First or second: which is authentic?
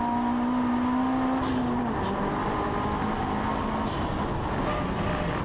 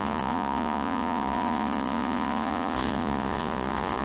first